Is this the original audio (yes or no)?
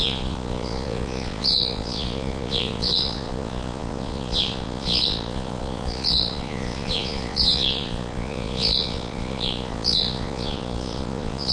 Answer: no